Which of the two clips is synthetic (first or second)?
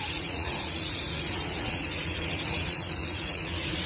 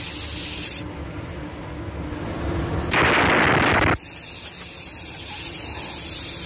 first